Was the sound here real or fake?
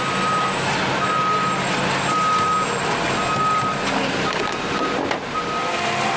real